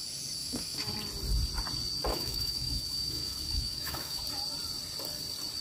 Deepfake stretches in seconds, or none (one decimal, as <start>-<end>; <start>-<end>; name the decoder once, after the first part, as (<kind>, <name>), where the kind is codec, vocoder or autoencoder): 0.4-0.9 (autoencoder, DAC-VAE); 2.1-4.2